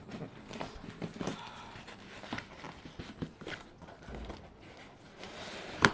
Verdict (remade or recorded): recorded